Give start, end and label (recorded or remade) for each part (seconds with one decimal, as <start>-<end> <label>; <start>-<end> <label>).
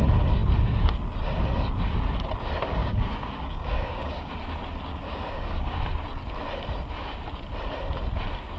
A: 0.0-2.8 recorded; 2.8-4.3 remade; 4.3-4.9 recorded; 4.9-5.8 remade; 5.8-8.6 recorded